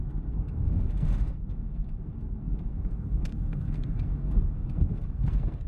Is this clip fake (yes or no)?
yes